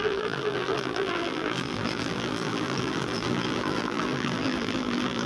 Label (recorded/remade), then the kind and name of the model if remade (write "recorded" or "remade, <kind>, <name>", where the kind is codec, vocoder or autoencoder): remade, vocoder, BigVGAN v2